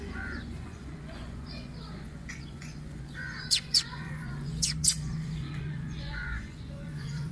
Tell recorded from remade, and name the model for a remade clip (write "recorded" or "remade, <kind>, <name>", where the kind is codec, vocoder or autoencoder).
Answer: remade, vocoder, Vocos